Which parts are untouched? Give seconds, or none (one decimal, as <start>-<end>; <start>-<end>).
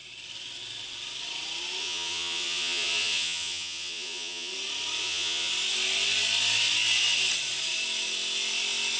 0.0-1.8; 4.5-5.0; 5.5-9.0